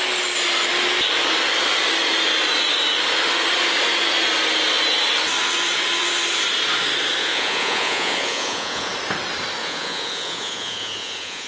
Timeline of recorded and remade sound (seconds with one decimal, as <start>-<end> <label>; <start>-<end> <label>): 0.0-7.2 recorded; 7.2-8.9 remade; 8.9-9.6 recorded; 9.6-11.5 remade